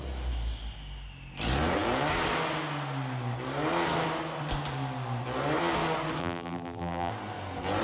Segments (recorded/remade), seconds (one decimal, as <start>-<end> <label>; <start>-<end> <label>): 0.0-6.2 recorded; 6.2-7.1 remade; 7.1-7.8 recorded

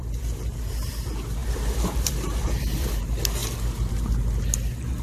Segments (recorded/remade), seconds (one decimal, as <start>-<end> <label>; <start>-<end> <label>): 0.0-1.4 recorded; 1.4-3.0 remade; 3.0-5.0 recorded

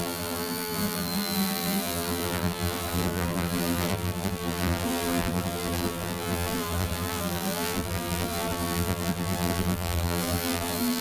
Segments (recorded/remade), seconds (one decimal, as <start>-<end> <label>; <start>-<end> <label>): 0.0-11.0 remade

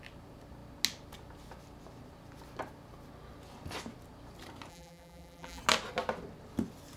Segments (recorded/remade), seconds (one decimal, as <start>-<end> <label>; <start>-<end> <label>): 0.0-4.7 recorded; 4.7-5.6 remade; 5.6-7.0 recorded

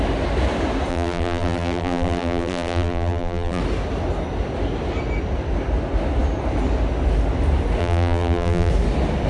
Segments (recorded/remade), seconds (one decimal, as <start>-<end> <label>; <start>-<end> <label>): 0.0-0.9 recorded; 0.9-3.6 remade; 3.6-7.8 recorded; 7.8-8.7 remade; 8.7-9.3 recorded

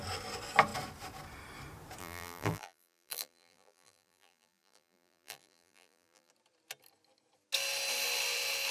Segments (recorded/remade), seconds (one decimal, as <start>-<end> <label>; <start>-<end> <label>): 0.0-2.0 recorded; 2.0-6.3 remade; 6.3-8.7 recorded

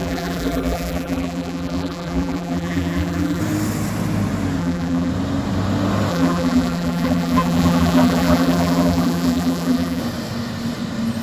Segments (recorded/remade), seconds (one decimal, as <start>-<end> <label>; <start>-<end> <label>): 0.0-3.4 remade; 3.4-4.6 recorded; 4.6-5.1 remade; 5.1-6.1 recorded; 6.1-10.0 remade; 10.0-11.2 recorded

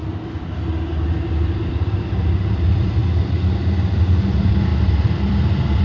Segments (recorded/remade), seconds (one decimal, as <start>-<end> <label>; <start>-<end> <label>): 0.0-3.0 remade; 3.0-3.9 recorded; 3.9-5.8 remade